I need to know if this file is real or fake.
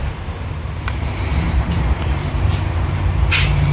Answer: fake